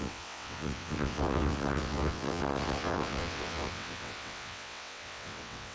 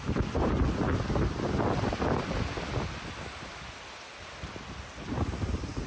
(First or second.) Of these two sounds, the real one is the second